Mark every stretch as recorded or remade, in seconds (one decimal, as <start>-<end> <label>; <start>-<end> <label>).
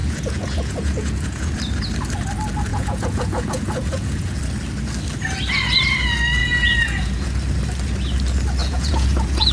0.0-1.5 remade; 1.5-2.7 recorded; 2.7-4.4 remade; 4.4-6.4 recorded; 6.4-7.3 remade; 7.3-8.6 recorded; 8.6-9.5 remade